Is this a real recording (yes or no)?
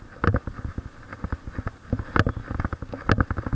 yes